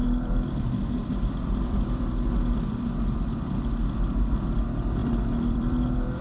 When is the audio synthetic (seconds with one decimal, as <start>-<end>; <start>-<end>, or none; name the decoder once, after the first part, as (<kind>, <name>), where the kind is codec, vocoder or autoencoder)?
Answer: 0.0-3.7 (vocoder, BigVGAN v2); 5.0-6.2